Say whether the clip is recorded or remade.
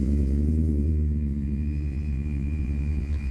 remade